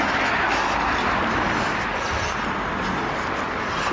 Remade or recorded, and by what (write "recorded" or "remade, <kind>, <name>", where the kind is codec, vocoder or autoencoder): recorded